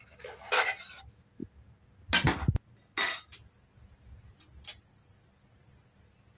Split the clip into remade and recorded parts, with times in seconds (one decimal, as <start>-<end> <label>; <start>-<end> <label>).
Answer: 0.0-6.4 recorded